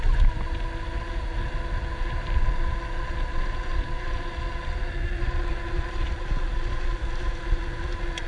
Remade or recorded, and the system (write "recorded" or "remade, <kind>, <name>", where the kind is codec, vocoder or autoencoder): recorded